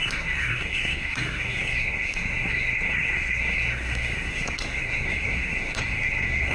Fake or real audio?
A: fake